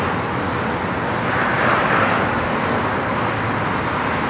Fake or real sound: real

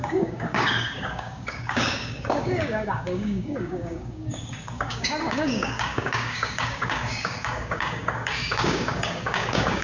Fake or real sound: fake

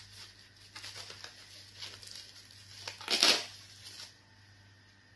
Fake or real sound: real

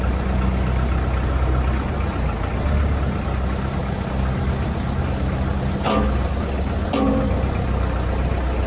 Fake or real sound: real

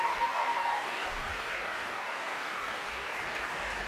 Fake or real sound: fake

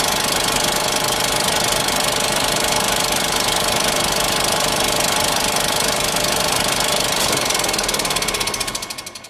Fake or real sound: real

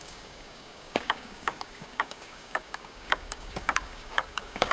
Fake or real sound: fake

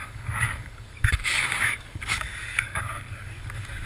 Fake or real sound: fake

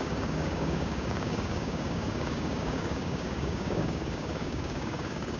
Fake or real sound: fake